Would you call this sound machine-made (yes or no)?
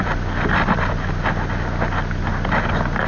no